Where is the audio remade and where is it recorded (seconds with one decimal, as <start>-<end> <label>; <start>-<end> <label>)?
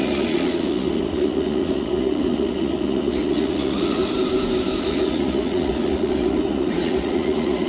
0.0-4.0 remade; 4.0-4.8 recorded; 4.8-7.7 remade